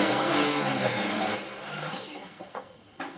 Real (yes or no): no